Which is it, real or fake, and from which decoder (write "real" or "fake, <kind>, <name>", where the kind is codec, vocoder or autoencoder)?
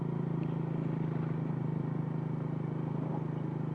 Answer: real